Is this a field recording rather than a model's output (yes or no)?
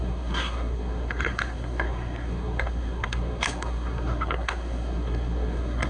no